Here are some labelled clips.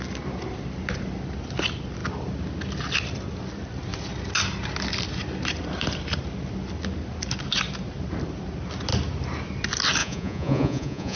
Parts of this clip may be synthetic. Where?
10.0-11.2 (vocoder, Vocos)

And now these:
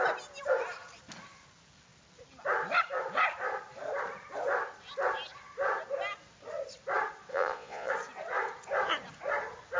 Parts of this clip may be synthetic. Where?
7.3-7.9 (vocoder, Vocos)

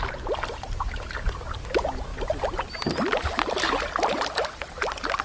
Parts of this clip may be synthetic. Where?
none

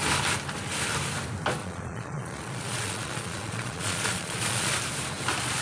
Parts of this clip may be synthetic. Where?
1.6-4.7 (vocoder, Vocos)

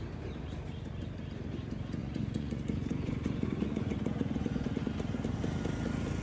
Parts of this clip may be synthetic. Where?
2.0-4.9 (vocoder, Vocos)